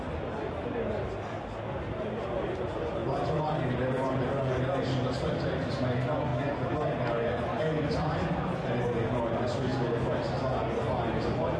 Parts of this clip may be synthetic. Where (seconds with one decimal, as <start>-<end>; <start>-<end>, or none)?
none